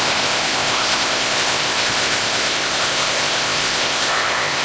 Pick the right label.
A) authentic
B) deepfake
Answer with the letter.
B